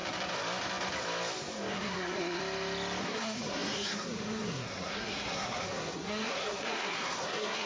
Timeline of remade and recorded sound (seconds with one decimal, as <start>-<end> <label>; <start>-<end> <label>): 0.0-1.7 recorded; 1.7-2.4 remade; 2.4-3.0 recorded; 3.0-7.7 remade